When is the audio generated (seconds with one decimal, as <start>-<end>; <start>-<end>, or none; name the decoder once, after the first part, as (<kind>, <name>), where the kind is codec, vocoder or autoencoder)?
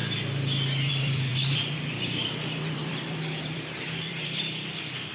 0.9-5.1 (vocoder, BigVGAN v2)